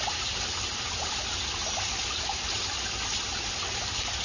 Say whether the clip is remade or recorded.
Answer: recorded